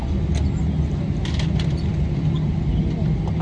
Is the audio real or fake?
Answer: real